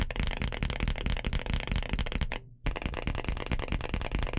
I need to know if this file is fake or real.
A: real